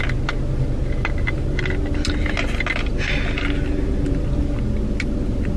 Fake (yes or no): no